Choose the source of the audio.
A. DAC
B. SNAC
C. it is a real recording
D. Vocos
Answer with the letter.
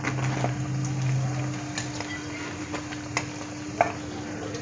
C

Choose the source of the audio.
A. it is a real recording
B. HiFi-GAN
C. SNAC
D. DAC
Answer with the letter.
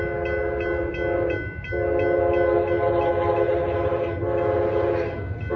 A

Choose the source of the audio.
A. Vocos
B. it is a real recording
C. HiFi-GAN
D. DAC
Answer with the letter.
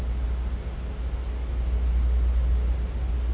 B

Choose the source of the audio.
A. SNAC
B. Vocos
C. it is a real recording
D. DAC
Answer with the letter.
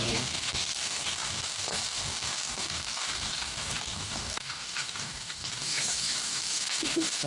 D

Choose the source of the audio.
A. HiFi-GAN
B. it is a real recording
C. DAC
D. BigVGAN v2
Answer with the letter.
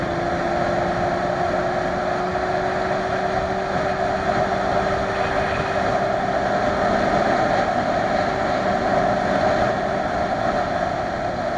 B